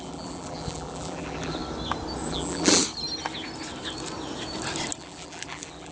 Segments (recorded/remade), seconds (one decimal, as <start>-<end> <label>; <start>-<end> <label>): 0.0-1.6 remade; 1.6-2.3 recorded; 2.3-2.8 remade; 2.8-5.0 recorded; 5.0-5.9 remade

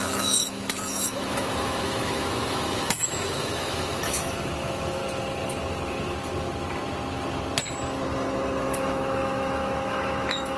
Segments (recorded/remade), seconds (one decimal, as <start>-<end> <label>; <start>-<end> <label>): 0.0-5.0 remade; 5.0-8.6 recorded; 8.6-10.6 remade

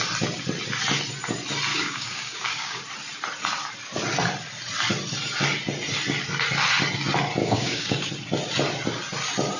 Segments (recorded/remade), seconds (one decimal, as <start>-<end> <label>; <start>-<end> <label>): 0.0-1.7 recorded; 1.7-2.8 remade; 2.8-7.4 recorded; 7.4-8.1 remade; 8.1-9.6 recorded